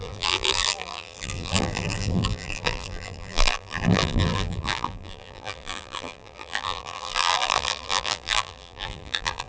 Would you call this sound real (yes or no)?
no